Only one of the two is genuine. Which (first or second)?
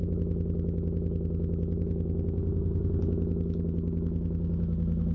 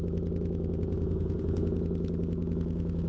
first